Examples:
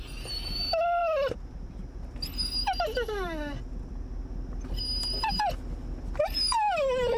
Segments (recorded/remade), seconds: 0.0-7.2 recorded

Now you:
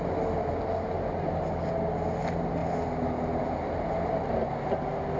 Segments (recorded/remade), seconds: 0.0-5.2 recorded

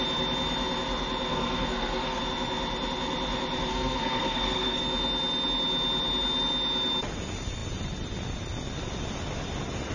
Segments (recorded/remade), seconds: 0.0-1.3 recorded; 1.3-2.2 remade; 2.2-3.7 recorded; 3.7-4.8 remade; 4.8-9.9 recorded

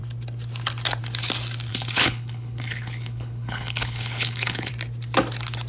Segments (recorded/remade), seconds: 0.0-1.7 recorded; 1.7-4.7 remade; 4.7-5.7 recorded